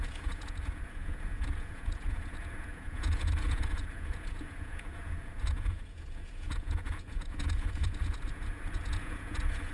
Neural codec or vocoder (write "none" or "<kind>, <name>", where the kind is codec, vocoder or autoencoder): vocoder, Vocos